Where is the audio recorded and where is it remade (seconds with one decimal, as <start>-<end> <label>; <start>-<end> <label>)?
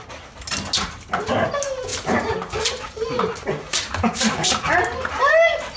0.0-1.9 recorded; 1.9-5.3 remade; 5.3-5.8 recorded